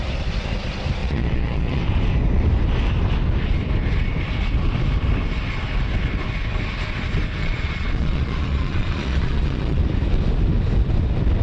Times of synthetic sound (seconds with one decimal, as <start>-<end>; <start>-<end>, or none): 1.0-1.8; 7.4-9.8